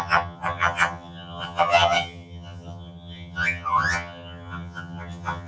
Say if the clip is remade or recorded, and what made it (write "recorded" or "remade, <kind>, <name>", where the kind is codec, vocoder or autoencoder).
remade, vocoder, HiFi-GAN